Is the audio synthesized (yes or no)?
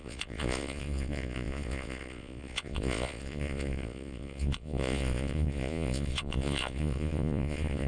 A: yes